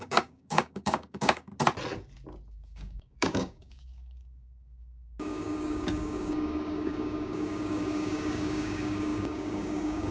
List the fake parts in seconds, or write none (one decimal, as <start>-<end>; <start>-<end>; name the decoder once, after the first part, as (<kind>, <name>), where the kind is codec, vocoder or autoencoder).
0.0-1.5 (codec, DAC); 2.5-10.1